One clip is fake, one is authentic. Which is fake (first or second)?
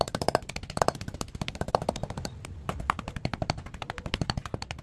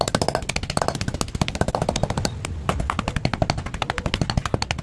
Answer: first